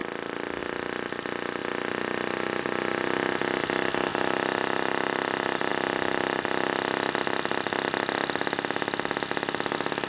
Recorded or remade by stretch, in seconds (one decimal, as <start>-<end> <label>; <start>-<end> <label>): 0.0-0.6 remade; 0.6-4.1 recorded; 4.1-5.7 remade; 5.7-10.1 recorded